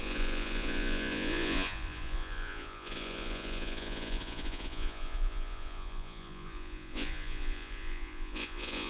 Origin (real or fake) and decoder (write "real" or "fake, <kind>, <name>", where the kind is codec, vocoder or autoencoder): fake, vocoder, Vocos